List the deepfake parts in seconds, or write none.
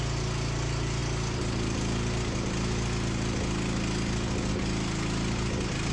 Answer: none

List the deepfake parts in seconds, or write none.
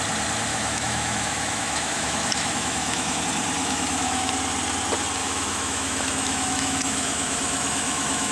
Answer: 0.5-3.2; 3.6-4.3; 5.2-8.3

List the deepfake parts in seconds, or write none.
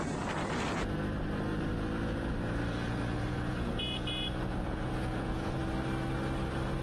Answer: 1.5-5.6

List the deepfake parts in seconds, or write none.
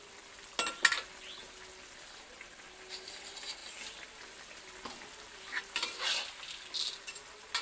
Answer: none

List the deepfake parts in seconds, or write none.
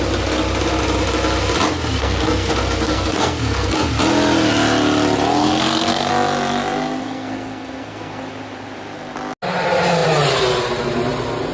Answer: 1.9-3.9; 5.4-6.1; 7.0-8.2